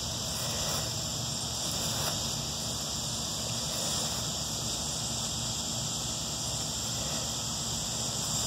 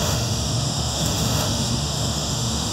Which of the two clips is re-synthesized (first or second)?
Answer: second